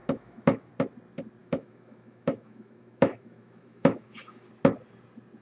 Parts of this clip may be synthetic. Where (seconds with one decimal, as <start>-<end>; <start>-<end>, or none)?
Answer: 0.0-0.7; 1.4-4.5